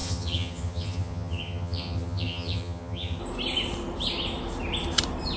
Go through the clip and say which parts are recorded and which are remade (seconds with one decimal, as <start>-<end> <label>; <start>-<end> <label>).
0.0-3.2 remade; 3.2-5.4 recorded